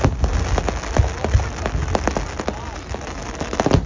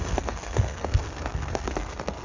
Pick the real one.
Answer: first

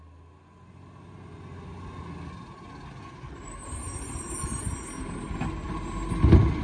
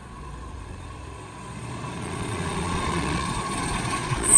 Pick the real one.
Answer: first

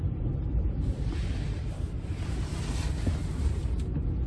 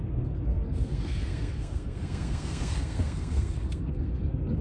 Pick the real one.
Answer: first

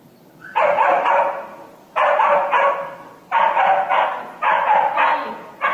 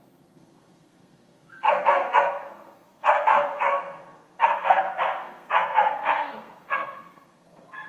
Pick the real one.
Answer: first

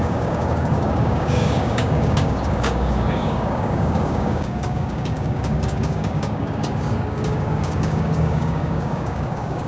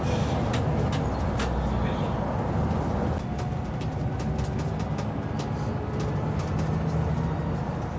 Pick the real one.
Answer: second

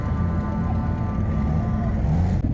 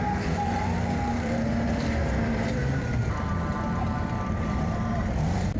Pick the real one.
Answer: first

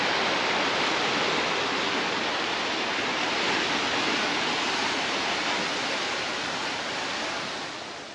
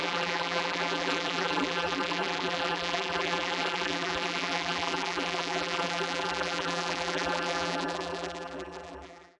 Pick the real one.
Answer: first